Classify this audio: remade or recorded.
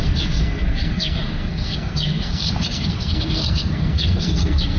remade